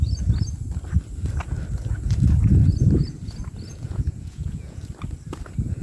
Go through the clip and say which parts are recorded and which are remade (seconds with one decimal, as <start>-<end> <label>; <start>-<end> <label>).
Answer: 0.0-3.7 recorded; 3.7-4.9 remade; 4.9-5.8 recorded

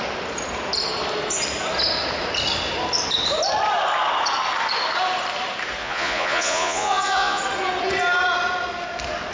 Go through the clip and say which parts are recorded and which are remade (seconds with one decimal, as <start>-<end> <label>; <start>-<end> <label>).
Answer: 0.0-5.8 recorded; 5.8-7.4 remade; 7.4-9.3 recorded

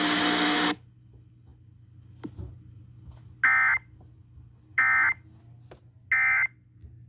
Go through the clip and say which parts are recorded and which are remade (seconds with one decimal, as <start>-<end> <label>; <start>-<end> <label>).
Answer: 0.0-7.1 recorded

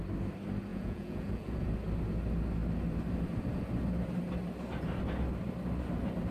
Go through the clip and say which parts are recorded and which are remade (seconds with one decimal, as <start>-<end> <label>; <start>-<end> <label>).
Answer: 0.0-0.7 recorded; 0.7-1.7 remade; 1.7-6.3 recorded

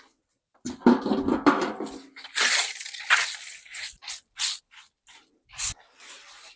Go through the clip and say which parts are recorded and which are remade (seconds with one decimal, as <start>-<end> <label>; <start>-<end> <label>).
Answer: 0.0-6.6 recorded

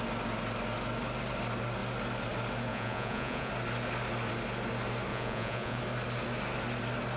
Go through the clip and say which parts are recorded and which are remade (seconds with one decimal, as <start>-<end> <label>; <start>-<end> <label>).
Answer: 0.0-2.7 recorded; 2.7-3.5 remade; 3.5-5.1 recorded; 5.1-5.8 remade; 5.8-7.2 recorded